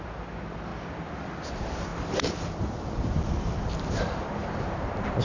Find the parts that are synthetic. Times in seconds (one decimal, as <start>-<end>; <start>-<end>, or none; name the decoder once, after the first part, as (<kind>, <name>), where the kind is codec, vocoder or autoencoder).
0.0-0.7 (vocoder, BigVGAN v2); 1.5-1.9; 4.5-5.2